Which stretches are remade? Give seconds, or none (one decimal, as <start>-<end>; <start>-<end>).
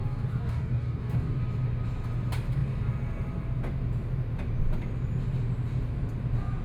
0.0-1.4